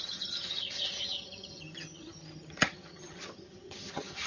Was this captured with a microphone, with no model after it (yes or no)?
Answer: no